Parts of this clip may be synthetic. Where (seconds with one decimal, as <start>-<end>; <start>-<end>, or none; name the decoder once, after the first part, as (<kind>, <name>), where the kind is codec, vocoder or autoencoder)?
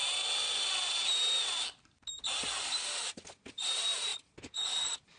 none